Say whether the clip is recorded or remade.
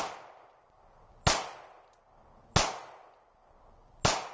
recorded